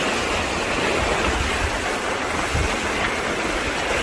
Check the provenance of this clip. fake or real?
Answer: real